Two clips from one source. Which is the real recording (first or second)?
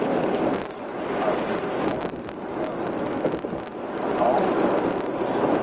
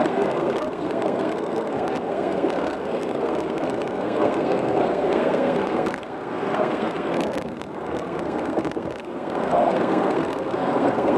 first